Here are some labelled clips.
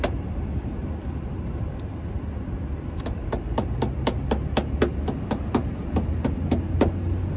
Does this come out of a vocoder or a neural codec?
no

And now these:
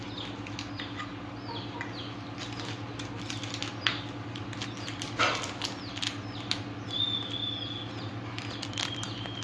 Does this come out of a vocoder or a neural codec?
no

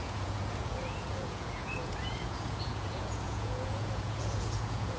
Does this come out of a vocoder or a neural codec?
yes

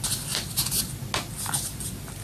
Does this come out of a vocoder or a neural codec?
no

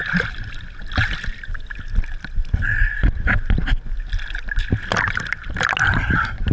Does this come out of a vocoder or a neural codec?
no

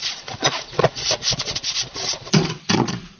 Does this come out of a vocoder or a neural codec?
yes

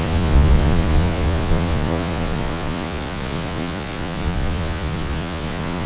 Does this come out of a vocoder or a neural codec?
yes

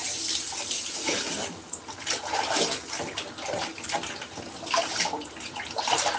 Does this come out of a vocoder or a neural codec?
no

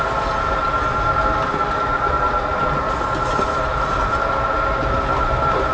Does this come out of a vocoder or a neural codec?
no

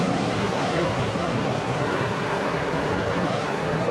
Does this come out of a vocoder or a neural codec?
yes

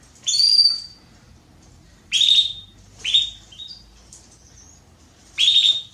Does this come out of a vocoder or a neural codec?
yes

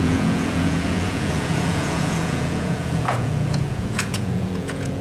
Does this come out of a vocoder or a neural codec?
yes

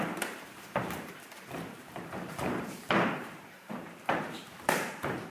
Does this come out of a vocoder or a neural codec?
yes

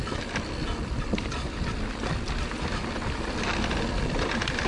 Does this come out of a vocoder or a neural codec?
no